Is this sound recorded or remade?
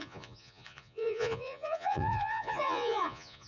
remade